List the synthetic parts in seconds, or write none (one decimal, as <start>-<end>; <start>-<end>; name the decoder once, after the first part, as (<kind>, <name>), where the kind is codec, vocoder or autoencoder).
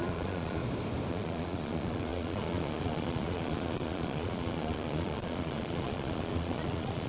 0.0-0.6 (vocoder, Vocos); 1.1-7.1